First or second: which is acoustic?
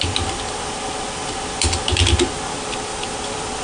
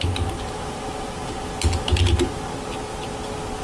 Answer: second